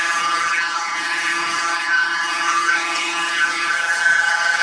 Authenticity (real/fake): fake